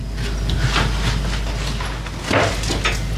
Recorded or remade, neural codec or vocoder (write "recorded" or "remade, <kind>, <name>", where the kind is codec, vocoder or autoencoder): recorded